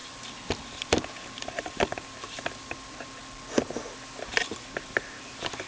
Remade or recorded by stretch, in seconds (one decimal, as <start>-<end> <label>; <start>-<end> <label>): 0.0-3.2 remade; 3.2-4.3 recorded; 4.3-5.7 remade